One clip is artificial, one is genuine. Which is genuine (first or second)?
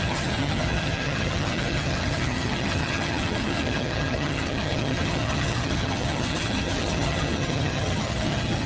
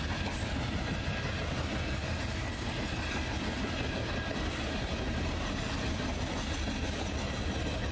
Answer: second